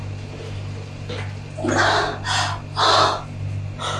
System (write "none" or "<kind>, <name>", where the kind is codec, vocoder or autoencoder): none